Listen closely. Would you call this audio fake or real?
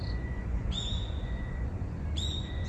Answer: fake